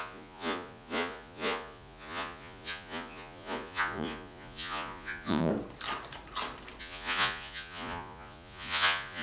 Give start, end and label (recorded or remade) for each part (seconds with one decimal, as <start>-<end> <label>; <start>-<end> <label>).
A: 0.0-5.5 remade; 5.5-6.8 recorded; 6.8-9.2 remade